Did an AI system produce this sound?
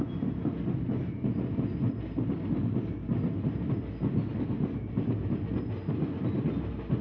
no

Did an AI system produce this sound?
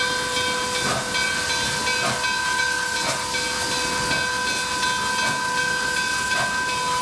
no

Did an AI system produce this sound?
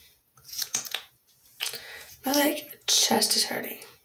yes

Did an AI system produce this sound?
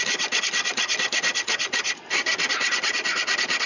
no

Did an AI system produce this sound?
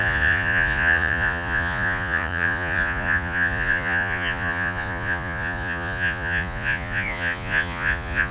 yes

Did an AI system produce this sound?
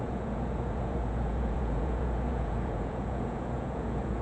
yes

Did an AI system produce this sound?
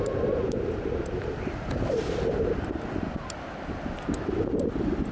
no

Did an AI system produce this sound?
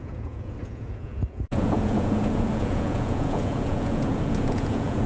yes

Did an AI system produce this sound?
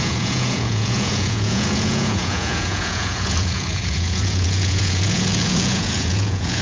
yes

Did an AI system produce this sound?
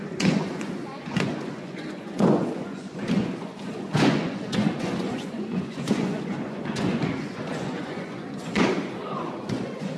yes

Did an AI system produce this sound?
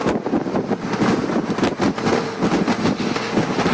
no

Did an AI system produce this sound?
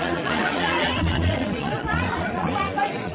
yes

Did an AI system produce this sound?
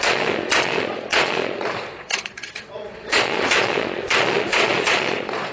yes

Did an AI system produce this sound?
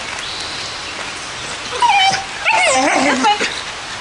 no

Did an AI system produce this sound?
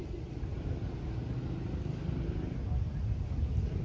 no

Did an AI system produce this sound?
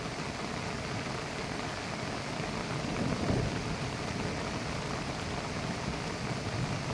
no